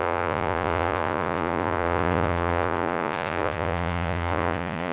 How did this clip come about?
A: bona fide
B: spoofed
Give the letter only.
B